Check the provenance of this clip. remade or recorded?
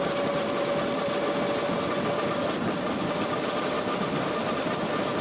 recorded